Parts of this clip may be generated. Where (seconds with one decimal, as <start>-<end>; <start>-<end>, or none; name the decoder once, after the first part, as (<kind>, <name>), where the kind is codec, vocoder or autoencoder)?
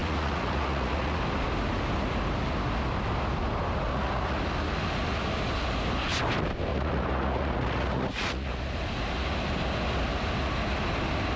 0.0-1.2 (vocoder, Vocos); 3.9-4.4; 6.7-8.5